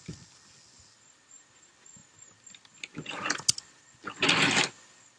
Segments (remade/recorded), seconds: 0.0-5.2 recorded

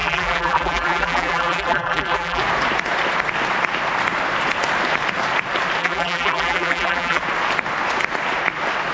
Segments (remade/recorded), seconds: 0.0-2.4 remade; 2.4-5.8 recorded; 5.8-7.2 remade; 7.2-8.9 recorded